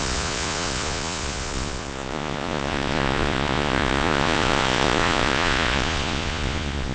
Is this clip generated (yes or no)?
yes